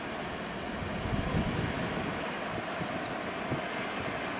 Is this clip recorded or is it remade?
recorded